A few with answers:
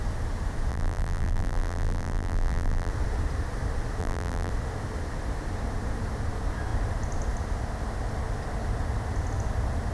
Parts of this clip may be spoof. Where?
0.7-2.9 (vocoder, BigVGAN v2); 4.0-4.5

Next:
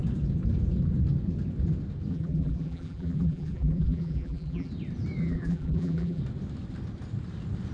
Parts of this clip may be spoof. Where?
2.1-4.7 (vocoder, BigVGAN v2); 5.2-6.2